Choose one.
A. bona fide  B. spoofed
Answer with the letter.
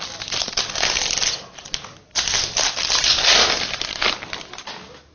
A